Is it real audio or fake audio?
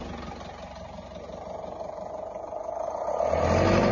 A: real